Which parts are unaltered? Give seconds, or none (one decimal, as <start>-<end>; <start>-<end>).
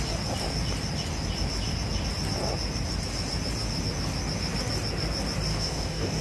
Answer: 0.0-5.5